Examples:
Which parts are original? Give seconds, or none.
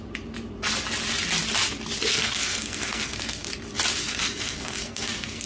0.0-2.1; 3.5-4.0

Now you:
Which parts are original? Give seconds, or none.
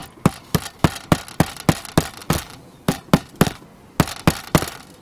0.0-2.2; 3.0-5.0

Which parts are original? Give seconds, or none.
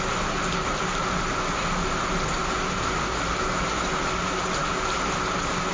0.0-5.7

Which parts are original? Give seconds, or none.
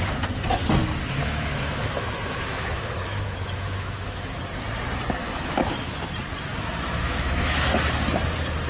0.0-1.2; 4.4-5.2; 5.9-6.5; 7.6-8.7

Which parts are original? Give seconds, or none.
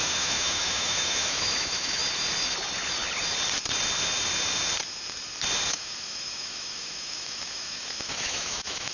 2.0-5.7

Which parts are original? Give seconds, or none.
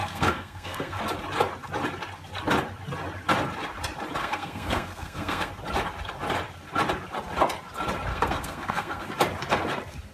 1.0-4.2; 5.5-8.1; 9.1-10.1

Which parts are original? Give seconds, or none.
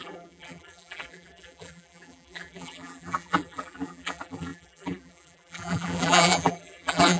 none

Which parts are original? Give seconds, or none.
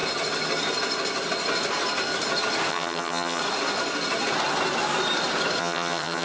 0.0-2.7; 3.4-5.6